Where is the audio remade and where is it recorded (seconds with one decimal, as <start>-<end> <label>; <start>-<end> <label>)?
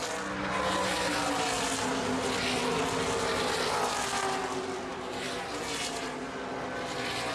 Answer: 0.0-7.3 recorded